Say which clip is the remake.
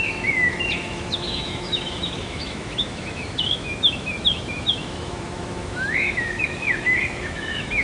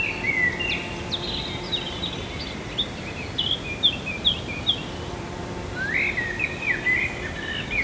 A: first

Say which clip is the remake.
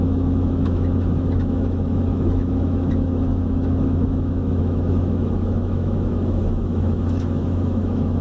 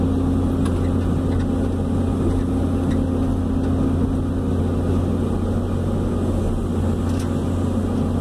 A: first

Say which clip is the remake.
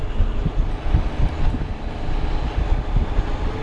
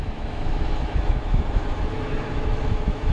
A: second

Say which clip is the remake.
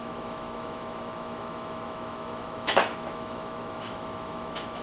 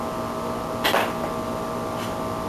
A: first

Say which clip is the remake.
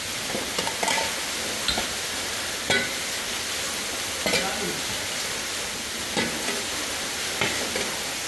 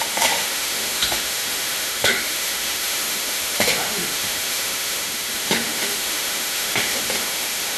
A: second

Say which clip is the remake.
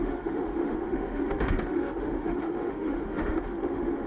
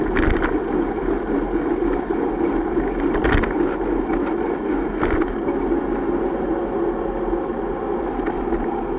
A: first